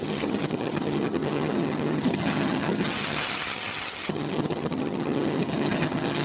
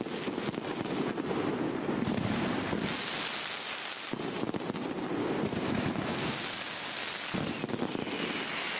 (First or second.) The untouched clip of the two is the second